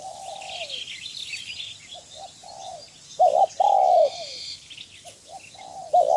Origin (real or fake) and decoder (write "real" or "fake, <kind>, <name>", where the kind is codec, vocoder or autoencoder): real